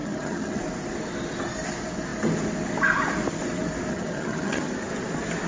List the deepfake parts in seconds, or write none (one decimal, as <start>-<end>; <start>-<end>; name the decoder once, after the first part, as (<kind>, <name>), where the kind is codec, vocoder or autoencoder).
0.0-0.6 (vocoder, HiFi-GAN); 3.9-4.7